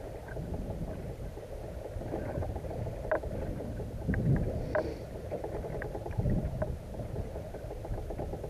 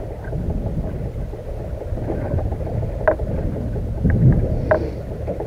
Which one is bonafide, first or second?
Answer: second